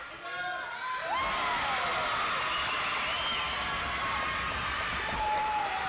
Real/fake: real